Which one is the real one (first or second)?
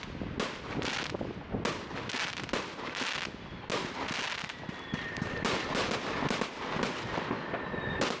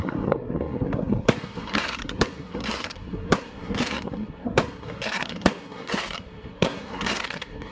first